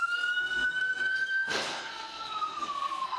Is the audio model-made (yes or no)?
yes